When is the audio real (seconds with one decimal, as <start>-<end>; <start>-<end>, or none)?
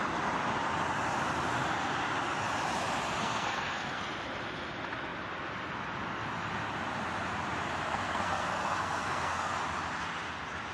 0.0-3.2; 4.0-7.9; 9.5-10.7